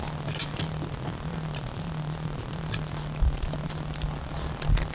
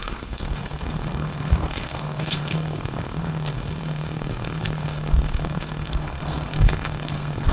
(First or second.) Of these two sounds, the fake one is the second